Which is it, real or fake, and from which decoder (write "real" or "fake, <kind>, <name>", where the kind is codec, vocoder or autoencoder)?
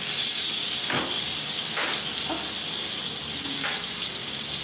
real